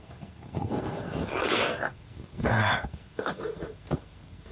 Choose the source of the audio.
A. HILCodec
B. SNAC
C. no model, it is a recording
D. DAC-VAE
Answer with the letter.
B